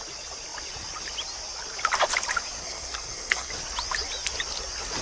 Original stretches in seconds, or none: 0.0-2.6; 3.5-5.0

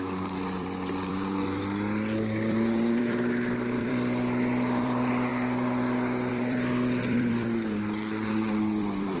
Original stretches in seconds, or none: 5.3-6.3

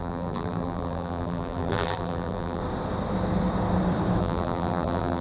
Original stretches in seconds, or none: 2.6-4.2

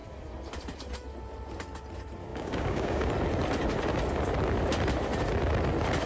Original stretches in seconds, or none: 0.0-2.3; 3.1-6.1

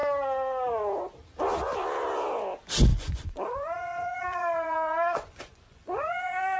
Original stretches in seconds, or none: 0.0-2.9

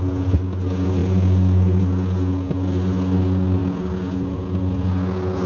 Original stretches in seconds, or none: 0.0-1.0; 1.8-5.5